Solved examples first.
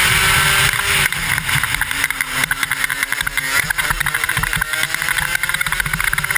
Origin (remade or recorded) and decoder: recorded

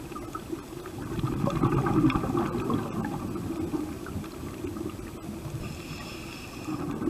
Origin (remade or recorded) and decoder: recorded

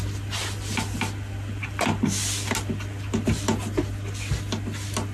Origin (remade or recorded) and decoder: recorded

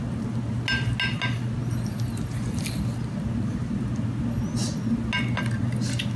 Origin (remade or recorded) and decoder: recorded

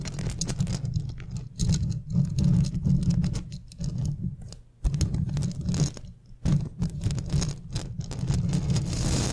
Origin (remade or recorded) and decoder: recorded